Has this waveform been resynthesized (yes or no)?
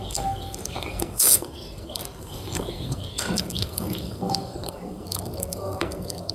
yes